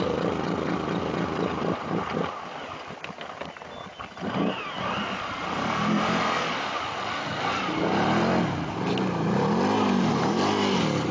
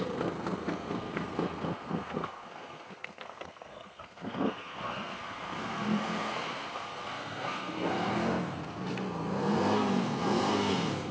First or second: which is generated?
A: second